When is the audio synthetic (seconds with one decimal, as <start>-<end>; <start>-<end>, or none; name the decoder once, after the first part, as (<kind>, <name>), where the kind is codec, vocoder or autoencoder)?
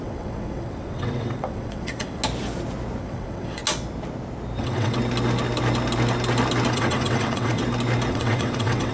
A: 0.0-2.2 (vocoder, WaveNeXt); 3.0-3.6; 4.6-5.0; 6.7-7.6; 8.1-8.9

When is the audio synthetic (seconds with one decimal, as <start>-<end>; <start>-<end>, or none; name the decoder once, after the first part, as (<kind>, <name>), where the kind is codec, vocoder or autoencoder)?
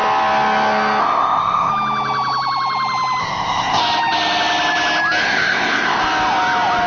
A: 1.0-1.7 (codec, ZipCodec); 3.2-3.8; 5.2-6.0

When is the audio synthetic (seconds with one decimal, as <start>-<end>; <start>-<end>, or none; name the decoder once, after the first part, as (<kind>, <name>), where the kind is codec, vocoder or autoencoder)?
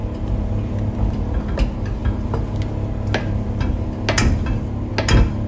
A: none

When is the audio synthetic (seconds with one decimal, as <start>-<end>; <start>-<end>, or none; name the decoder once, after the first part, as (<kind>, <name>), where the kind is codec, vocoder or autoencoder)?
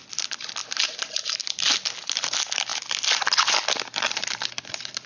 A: 0.6-1.4 (vocoder, BigVGAN v2)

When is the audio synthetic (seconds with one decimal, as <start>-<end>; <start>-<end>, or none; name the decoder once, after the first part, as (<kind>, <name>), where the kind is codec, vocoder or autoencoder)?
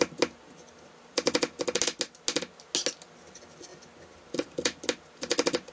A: 3.7-4.8 (vocoder, BigVGAN v2)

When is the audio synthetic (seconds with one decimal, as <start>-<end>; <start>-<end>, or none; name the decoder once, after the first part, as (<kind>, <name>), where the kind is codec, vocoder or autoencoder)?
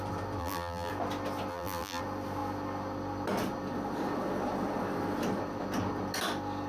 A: 0.4-0.9 (vocoder, BigVGAN v2); 1.5-2.0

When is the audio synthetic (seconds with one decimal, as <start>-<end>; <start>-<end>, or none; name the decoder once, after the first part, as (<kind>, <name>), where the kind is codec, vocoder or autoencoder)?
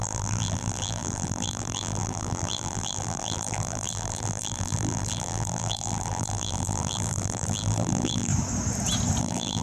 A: 0.0-8.3 (vocoder, BigVGAN v2); 9.2-9.6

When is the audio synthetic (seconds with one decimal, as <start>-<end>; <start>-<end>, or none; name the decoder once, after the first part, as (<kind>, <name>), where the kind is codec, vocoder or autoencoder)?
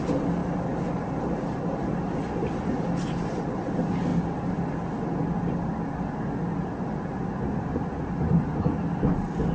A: none